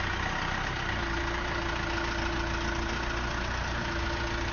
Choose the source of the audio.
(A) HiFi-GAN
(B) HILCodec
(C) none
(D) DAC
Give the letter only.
C